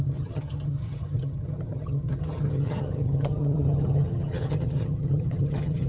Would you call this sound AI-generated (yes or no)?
yes